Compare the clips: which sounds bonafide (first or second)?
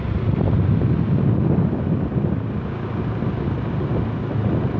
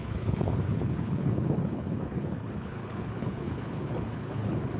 first